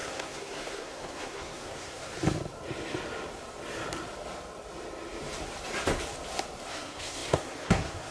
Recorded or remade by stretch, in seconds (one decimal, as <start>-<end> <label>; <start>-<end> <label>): 0.0-2.1 remade; 2.1-6.7 recorded; 6.7-8.1 remade